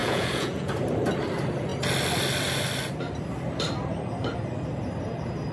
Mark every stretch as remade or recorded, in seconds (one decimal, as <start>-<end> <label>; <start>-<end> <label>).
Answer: 0.0-0.7 remade; 0.7-5.5 recorded